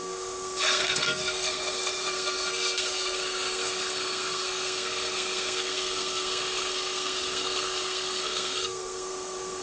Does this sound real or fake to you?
fake